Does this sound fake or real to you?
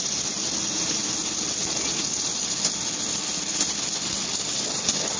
real